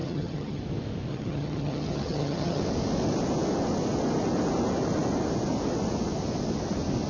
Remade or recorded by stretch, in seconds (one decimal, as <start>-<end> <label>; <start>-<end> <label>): 0.0-0.6 remade; 0.6-1.1 recorded; 1.1-2.6 remade; 2.6-7.1 recorded

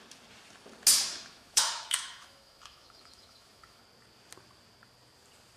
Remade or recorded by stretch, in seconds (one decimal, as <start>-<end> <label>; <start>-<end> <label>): 0.0-1.1 recorded; 1.1-3.8 remade; 3.8-5.6 recorded

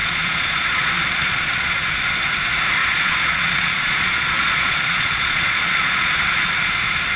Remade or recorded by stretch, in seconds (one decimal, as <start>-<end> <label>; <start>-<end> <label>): 0.0-1.9 remade; 1.9-2.8 recorded; 2.8-6.4 remade; 6.4-7.2 recorded

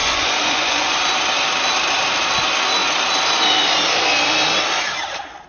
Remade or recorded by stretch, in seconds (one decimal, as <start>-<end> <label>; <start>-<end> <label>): 0.0-1.0 remade; 1.0-5.5 recorded

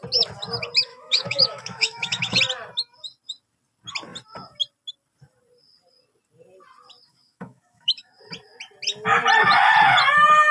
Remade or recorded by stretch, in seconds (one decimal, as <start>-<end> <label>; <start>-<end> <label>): 0.0-0.9 recorded; 0.9-2.4 remade; 2.4-7.1 recorded; 7.1-8.2 remade; 8.2-10.5 recorded